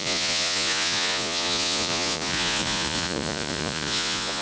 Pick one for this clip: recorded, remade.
remade